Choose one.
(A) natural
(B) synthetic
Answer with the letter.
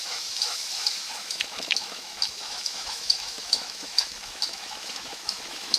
B